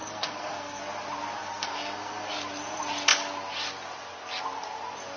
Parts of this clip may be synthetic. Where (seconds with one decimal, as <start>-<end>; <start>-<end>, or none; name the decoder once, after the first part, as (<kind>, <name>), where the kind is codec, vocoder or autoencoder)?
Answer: 0.0-0.8 (codec, SNAC); 1.4-2.3